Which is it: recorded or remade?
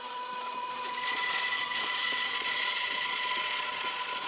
remade